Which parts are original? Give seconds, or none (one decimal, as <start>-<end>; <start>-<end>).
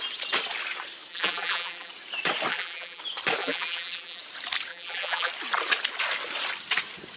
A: 0.0-1.1; 1.9-2.5; 3.0-3.4; 4.2-4.7; 5.3-7.2